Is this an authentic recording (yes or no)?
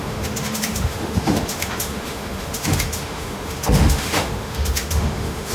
no